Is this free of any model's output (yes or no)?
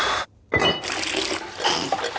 yes